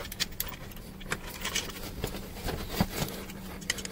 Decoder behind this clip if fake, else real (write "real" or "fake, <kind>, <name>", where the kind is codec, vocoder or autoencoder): real